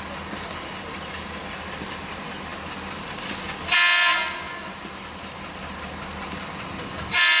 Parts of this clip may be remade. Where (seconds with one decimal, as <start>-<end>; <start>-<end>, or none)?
none